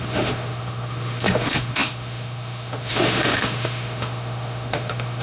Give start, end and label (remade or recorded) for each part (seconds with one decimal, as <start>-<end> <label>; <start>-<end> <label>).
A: 0.0-5.2 remade

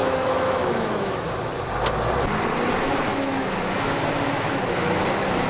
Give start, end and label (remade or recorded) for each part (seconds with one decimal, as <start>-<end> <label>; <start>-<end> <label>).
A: 0.0-1.3 remade; 1.3-3.1 recorded; 3.1-5.0 remade; 5.0-5.5 recorded

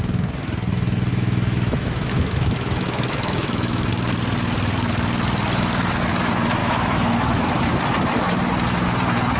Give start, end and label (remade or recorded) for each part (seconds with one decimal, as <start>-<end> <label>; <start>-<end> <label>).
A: 0.0-1.1 recorded; 1.1-3.9 remade; 3.9-6.6 recorded; 6.6-7.5 remade; 7.5-9.4 recorded

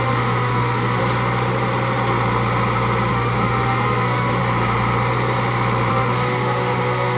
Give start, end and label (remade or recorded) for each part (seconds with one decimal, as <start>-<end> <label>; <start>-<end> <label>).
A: 0.0-1.0 remade; 1.0-3.1 recorded; 3.1-4.4 remade; 4.4-5.9 recorded; 5.9-7.2 remade

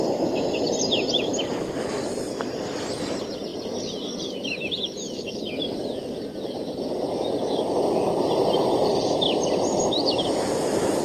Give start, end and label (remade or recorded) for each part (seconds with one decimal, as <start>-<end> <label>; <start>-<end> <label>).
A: 0.0-11.0 recorded

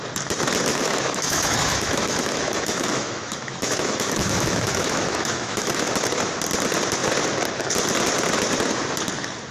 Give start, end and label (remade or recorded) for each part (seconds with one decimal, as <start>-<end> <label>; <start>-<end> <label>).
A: 0.0-0.7 recorded; 0.7-5.9 remade; 5.9-9.5 recorded

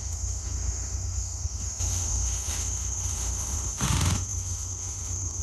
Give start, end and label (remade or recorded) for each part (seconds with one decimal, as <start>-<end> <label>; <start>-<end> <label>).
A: 0.0-5.4 remade

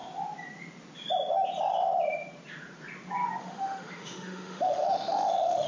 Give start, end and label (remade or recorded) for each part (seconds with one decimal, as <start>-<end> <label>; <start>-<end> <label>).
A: 0.0-3.4 recorded; 3.4-5.7 remade